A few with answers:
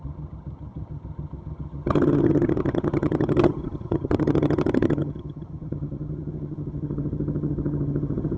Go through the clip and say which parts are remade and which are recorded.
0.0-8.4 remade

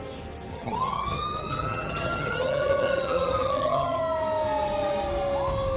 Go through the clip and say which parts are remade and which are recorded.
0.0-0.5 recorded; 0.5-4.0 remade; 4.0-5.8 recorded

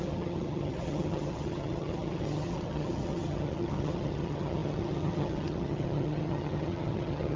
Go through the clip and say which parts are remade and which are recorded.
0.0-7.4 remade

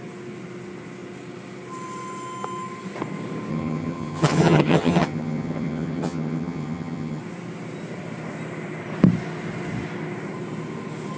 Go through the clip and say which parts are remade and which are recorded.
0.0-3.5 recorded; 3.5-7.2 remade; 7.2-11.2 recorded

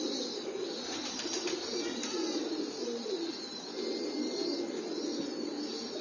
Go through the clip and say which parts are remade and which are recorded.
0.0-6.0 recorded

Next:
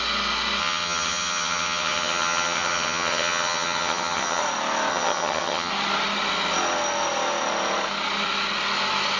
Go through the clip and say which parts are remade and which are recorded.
0.0-0.6 recorded; 0.6-4.4 remade; 4.4-4.9 recorded; 4.9-5.7 remade; 5.7-9.2 recorded